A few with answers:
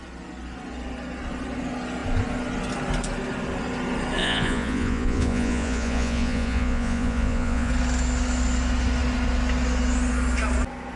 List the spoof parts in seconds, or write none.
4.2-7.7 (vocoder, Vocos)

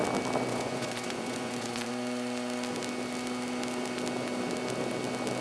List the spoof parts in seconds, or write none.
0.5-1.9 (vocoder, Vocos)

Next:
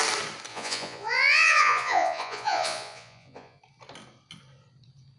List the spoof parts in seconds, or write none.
0.5-3.6 (vocoder, Vocos)